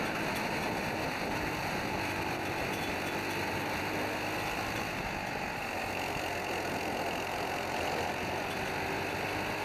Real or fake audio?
real